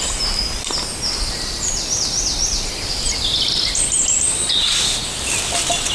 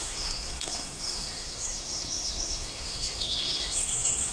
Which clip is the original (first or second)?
first